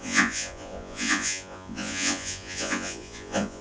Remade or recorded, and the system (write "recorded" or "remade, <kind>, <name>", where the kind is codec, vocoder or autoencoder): remade, vocoder, Vocos